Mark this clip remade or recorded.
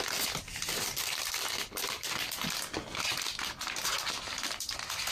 remade